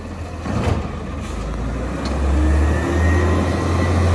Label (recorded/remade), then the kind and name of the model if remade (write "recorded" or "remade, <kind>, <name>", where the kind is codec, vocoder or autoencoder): recorded